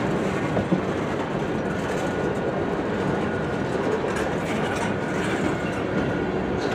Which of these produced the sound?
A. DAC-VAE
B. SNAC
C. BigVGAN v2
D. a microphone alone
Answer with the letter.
D